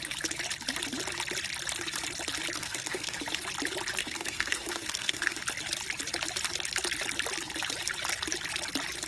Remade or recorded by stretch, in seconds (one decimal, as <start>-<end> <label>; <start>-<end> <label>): 0.0-2.6 recorded; 2.6-3.2 remade; 3.2-4.0 recorded; 4.0-5.4 remade; 5.4-9.1 recorded